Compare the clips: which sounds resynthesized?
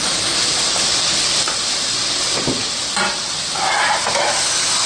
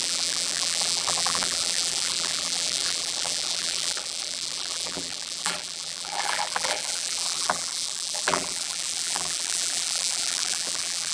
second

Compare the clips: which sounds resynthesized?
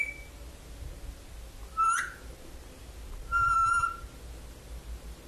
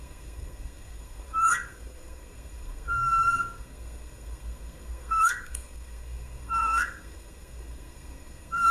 second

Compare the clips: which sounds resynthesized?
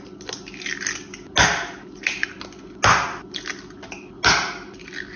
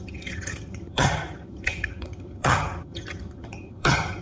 second